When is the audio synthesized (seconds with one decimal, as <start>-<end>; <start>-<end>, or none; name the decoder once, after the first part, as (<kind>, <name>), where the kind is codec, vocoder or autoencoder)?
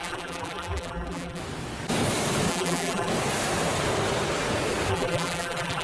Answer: 0.0-1.4 (vocoder, BigVGAN v2); 2.5-3.1; 4.9-5.8